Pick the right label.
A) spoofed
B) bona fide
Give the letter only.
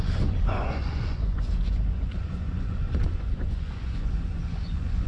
A